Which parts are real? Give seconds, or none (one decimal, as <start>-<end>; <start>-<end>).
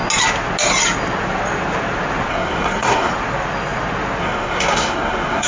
0.0-2.3; 3.1-4.2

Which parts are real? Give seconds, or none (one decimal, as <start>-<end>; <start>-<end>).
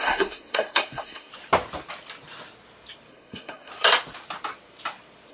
1.3-3.1; 3.7-5.3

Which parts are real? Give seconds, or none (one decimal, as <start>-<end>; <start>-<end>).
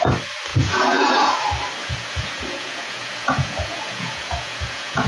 0.0-0.5; 1.4-1.8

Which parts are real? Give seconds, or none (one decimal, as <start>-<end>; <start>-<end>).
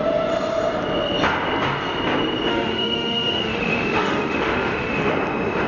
0.0-2.5; 5.1-5.7